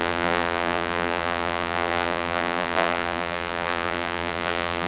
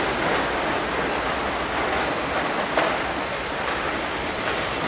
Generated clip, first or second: first